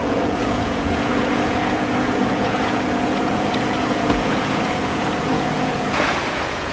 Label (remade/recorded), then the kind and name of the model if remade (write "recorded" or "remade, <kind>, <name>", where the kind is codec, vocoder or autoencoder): remade, vocoder, Vocos